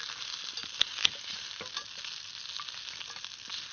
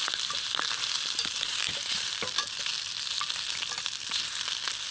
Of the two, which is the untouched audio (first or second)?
first